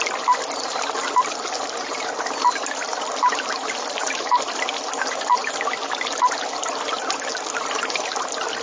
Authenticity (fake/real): real